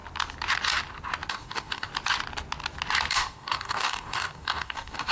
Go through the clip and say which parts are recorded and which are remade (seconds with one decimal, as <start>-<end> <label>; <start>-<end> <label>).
0.0-1.3 recorded; 1.3-1.9 remade; 1.9-3.1 recorded; 3.1-5.1 remade